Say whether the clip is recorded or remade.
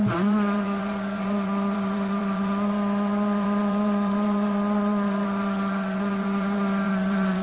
remade